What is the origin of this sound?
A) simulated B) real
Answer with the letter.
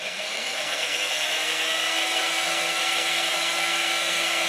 A